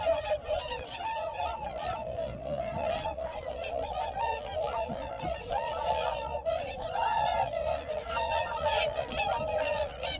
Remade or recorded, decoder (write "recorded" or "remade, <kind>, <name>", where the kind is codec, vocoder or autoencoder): remade, vocoder, Vocos